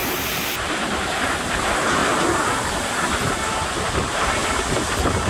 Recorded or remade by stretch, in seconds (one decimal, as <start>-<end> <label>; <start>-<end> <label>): 0.0-1.5 remade; 1.5-5.3 recorded